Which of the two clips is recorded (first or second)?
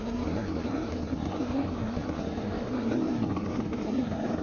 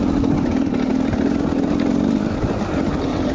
second